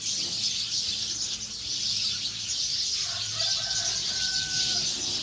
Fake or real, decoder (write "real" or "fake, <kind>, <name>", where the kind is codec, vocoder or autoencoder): fake, vocoder, BigVGAN v2